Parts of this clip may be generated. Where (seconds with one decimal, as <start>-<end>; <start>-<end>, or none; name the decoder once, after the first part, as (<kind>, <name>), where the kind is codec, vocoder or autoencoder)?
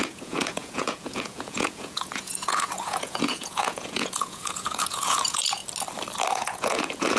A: 0.0-5.6 (vocoder, Vocos); 6.3-7.2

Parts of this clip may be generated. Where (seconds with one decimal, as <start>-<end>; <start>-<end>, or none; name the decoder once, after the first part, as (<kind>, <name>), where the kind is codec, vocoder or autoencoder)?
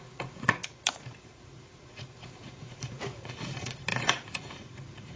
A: 0.0-5.2 (vocoder, Vocos)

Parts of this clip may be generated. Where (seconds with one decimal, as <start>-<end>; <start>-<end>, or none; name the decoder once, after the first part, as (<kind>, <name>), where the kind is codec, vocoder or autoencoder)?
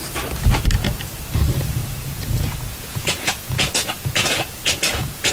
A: 1.8-5.3 (vocoder, Vocos)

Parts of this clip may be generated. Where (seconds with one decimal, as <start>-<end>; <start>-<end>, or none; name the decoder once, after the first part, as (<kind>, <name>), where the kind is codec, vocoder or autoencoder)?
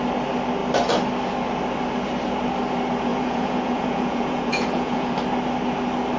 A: 3.1-5.1 (vocoder, Vocos)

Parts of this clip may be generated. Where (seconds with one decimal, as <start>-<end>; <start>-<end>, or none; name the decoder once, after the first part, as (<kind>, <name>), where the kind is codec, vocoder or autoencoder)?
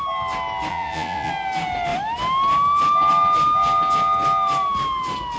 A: 0.7-1.3 (vocoder, Vocos)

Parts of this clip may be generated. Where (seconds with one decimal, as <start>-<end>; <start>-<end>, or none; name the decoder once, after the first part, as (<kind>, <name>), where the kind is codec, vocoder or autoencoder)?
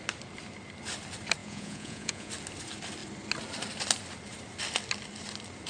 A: 1.4-2.3 (vocoder, Vocos)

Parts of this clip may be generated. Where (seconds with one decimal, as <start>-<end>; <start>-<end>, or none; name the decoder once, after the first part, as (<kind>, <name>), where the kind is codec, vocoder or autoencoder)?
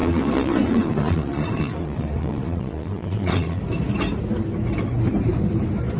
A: 0.0-3.6 (vocoder, Vocos)